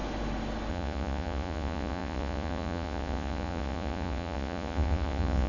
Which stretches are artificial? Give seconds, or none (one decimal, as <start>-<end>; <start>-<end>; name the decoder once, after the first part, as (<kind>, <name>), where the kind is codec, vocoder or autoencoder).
0.7-5.5 (vocoder, Vocos)